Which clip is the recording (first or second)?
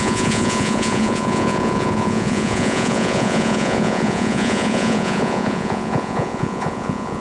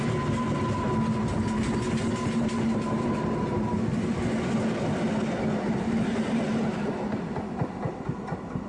second